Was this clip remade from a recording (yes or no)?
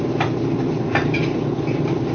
no